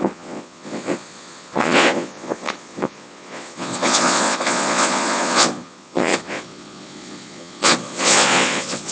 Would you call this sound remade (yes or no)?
yes